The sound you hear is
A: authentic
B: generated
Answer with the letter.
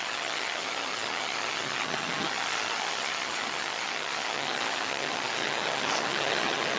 B